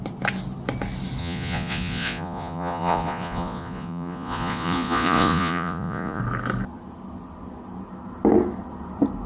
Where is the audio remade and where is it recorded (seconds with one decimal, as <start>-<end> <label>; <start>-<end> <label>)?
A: 0.0-1.2 recorded; 1.2-6.2 remade; 6.2-9.3 recorded